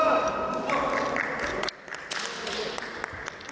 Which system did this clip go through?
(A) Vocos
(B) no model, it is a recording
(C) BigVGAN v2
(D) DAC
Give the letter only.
B